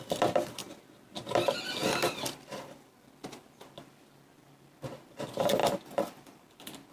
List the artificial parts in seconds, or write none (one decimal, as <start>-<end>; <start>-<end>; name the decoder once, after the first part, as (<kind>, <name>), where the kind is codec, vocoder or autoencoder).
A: 1.8-3.1 (vocoder, BigVGAN v2)